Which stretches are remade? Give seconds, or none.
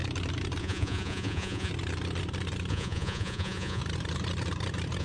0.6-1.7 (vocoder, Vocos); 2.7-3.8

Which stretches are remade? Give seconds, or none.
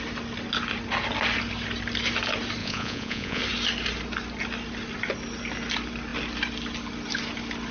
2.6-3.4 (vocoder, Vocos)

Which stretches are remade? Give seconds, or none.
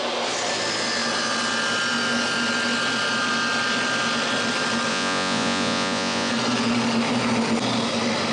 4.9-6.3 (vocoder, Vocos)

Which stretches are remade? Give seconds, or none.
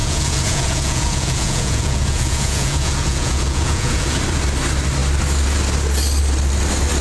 0.0-4.2 (vocoder, Vocos)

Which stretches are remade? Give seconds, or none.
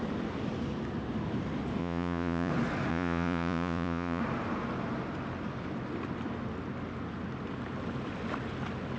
1.8-2.5 (vocoder, Vocos); 2.9-4.2